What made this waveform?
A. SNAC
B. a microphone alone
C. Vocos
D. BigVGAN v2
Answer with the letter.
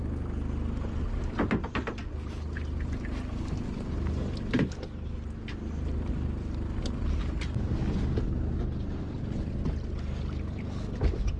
B